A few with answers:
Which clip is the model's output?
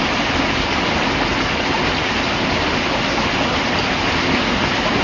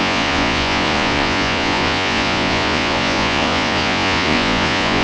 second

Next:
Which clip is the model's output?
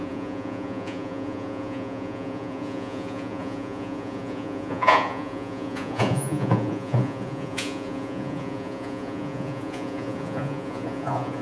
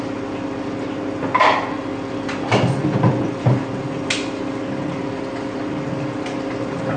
first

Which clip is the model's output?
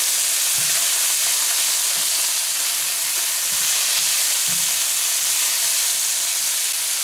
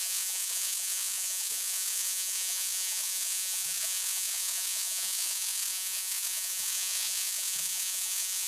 second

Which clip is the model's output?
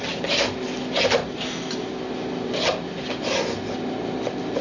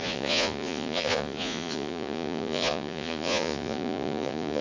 second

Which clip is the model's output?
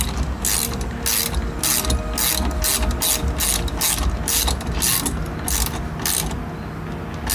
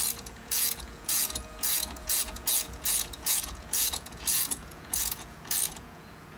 second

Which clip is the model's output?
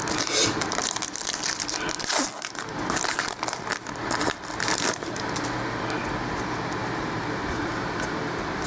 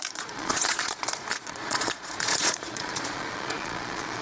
second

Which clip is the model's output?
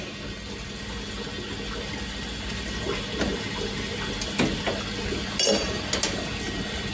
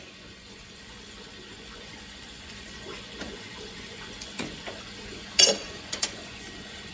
second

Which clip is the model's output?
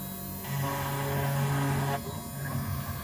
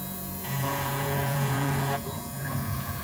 second